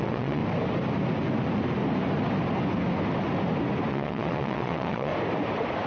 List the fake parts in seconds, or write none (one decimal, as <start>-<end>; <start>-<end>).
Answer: 0.0-0.4; 3.9-5.1